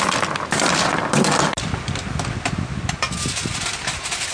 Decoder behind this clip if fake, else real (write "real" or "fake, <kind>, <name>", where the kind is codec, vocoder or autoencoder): real